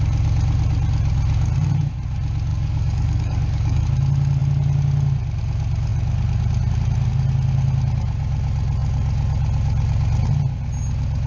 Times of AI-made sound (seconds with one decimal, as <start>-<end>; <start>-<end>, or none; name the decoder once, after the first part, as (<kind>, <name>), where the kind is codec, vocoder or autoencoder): 2.5-3.8 (codec, DAC)